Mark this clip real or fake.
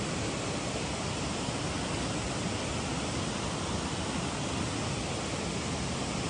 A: real